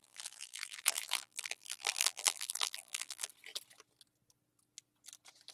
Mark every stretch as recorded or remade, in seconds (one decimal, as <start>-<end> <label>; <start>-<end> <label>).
0.0-3.3 remade; 3.3-5.5 recorded